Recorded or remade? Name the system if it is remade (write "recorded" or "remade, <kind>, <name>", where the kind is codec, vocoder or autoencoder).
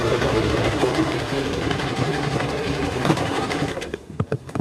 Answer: remade, codec, SNAC